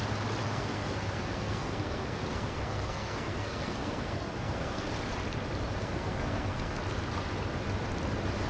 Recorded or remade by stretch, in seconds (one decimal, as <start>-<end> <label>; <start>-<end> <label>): 0.0-0.4 recorded; 0.4-4.9 remade; 4.9-5.8 recorded; 5.8-6.8 remade; 6.8-8.5 recorded